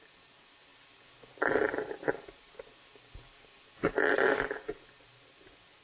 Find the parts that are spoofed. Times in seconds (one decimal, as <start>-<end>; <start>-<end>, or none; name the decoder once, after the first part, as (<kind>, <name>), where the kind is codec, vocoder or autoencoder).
none